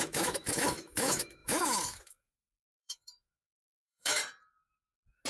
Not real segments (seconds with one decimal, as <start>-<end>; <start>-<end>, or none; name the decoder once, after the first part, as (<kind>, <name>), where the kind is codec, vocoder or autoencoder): 0.0-4.2 (autoencoder, DAC-VAE)